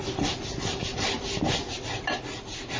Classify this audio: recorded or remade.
recorded